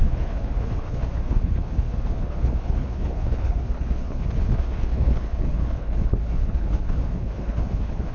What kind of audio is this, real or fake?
fake